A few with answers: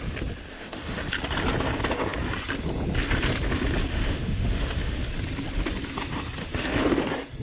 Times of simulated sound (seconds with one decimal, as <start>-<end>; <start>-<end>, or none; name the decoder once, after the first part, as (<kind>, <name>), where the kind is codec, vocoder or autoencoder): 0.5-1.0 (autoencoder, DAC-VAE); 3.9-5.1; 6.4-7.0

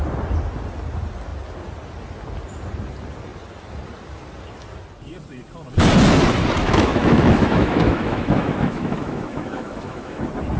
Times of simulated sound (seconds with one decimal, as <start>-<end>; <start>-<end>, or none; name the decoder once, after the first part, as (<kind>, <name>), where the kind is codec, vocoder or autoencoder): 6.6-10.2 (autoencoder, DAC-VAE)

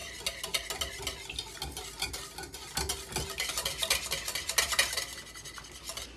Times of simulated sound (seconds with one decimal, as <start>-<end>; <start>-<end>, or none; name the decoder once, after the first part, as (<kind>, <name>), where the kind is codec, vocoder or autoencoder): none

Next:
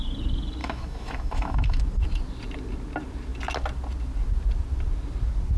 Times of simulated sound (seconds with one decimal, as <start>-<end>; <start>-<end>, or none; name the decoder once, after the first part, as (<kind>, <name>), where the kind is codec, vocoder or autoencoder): 0.6-1.8 (autoencoder, DAC-VAE)

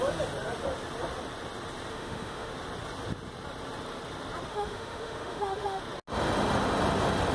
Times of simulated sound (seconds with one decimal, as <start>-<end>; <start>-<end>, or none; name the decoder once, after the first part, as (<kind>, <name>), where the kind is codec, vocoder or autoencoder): 1.9-2.5 (autoencoder, DAC-VAE); 4.5-5.8

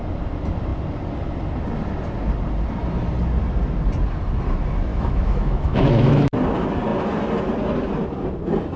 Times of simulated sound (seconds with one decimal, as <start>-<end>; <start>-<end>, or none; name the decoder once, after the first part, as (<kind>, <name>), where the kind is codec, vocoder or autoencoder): 4.9-6.3 (autoencoder, DAC-VAE)